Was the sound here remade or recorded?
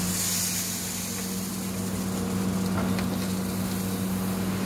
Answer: recorded